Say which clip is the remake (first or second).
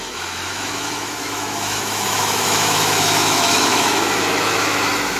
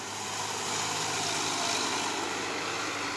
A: first